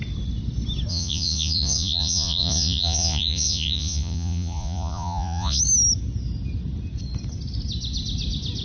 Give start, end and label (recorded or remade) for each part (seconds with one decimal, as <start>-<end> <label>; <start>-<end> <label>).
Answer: 0.0-0.9 recorded; 0.9-5.6 remade; 5.6-8.6 recorded